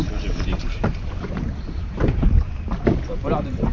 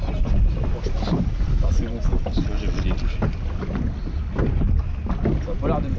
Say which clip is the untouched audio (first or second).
second